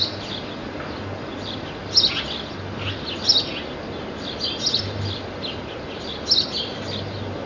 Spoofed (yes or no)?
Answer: no